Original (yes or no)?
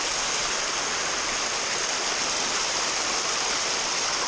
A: yes